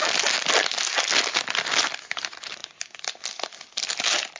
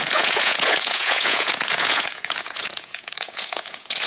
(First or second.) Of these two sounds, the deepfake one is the second